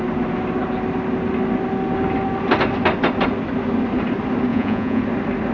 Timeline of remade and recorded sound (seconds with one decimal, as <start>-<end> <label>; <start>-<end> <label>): 0.0-4.5 recorded; 4.5-5.0 remade; 5.0-5.5 recorded